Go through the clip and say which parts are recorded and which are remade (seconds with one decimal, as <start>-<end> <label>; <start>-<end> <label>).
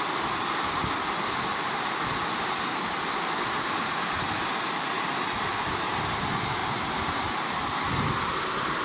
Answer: 0.0-8.8 recorded